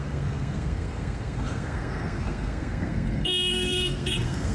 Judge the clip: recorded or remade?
remade